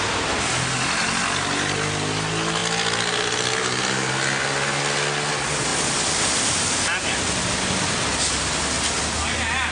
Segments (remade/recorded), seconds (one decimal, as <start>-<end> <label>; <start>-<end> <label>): 0.0-9.7 recorded